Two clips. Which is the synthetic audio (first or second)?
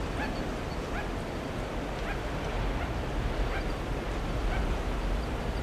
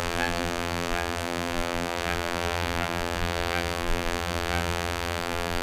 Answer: second